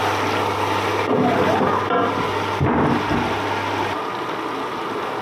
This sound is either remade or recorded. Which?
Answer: recorded